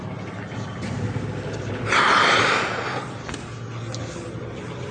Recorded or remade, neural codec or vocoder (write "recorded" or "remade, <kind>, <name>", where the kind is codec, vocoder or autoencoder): recorded